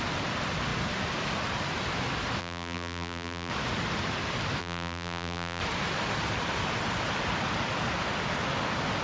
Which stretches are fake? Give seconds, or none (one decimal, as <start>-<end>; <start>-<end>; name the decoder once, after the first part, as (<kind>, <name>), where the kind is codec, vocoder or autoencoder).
2.4-3.5 (vocoder, BigVGAN v2); 4.6-5.6